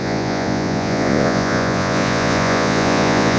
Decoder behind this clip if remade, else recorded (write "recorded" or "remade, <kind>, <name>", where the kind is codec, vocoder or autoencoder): remade, vocoder, Vocos